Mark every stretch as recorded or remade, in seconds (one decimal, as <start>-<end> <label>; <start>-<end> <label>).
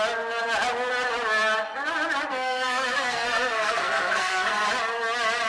0.0-2.3 recorded; 2.3-4.7 remade; 4.7-5.5 recorded